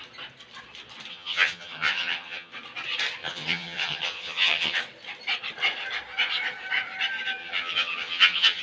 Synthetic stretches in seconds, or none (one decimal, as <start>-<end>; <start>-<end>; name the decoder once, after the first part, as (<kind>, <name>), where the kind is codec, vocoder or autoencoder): 1.1-2.5 (vocoder, HiFi-GAN); 3.2-4.8; 7.4-8.6